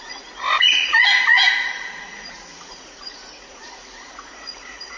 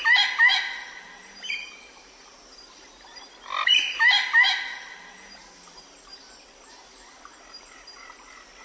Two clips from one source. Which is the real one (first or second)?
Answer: second